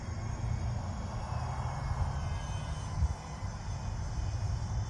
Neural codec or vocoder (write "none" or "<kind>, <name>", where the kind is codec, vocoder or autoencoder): none